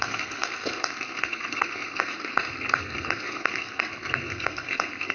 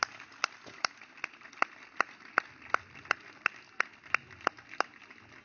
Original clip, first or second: second